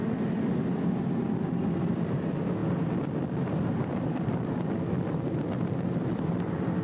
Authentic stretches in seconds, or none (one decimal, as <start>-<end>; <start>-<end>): 0.0-6.8